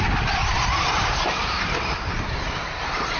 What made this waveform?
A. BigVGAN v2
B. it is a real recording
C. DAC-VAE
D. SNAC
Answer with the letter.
B